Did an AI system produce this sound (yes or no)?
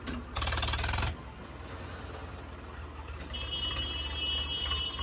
no